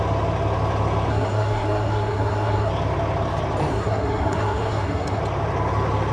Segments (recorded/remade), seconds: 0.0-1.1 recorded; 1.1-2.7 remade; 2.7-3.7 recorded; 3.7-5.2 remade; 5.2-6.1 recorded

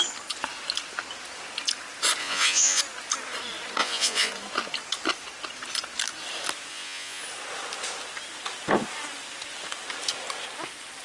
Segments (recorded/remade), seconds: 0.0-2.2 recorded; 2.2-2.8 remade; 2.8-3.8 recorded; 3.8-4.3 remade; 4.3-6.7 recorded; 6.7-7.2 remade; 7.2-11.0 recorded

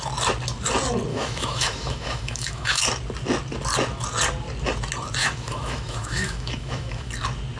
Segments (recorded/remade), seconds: 0.0-1.1 recorded; 1.1-2.8 remade; 2.8-5.2 recorded; 5.2-7.1 remade; 7.1-7.6 recorded

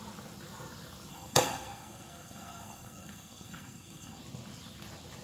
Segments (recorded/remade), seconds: 0.0-1.1 recorded; 1.1-4.2 remade; 4.2-5.2 recorded

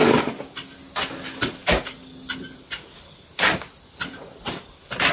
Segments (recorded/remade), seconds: 0.0-5.1 recorded

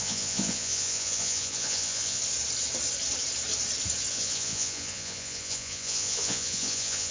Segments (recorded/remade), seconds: 0.0-2.2 remade; 2.2-4.1 recorded; 4.1-7.1 remade

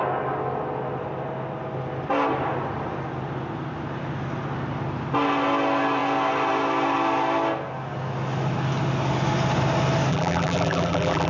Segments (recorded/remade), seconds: 0.0-10.1 recorded; 10.1-11.3 remade

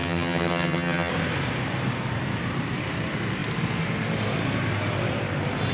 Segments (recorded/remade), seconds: 0.0-1.1 remade; 1.1-5.7 recorded